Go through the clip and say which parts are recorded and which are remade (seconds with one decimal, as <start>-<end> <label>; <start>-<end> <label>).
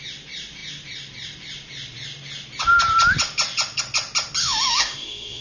0.0-4.4 recorded; 4.4-5.4 remade